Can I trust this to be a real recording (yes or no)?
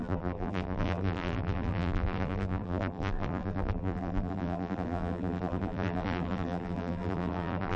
no